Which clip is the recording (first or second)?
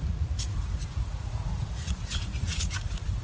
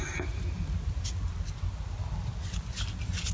second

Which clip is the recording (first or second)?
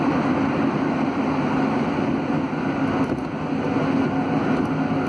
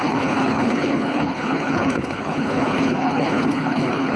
first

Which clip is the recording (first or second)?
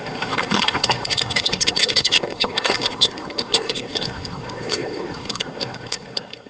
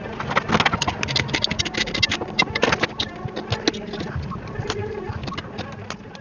second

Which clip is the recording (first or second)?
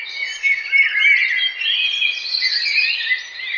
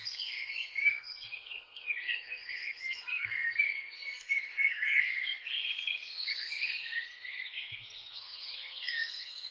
first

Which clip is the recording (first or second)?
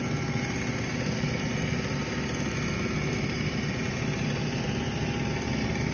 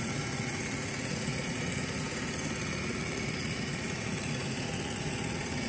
first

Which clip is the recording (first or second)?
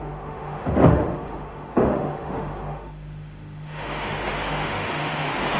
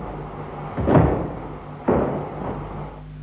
second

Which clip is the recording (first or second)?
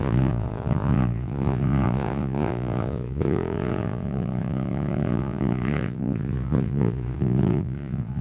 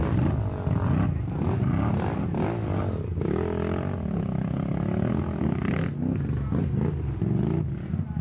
second